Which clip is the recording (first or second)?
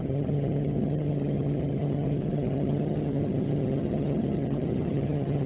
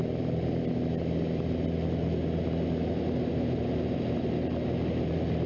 second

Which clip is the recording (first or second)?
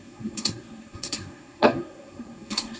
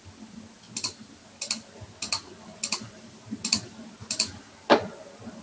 second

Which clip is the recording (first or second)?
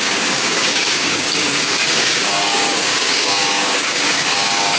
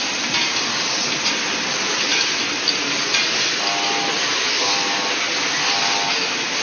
second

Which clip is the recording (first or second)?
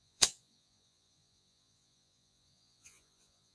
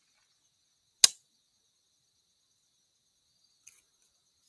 second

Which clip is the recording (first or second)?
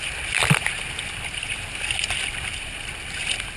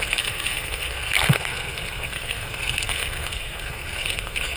first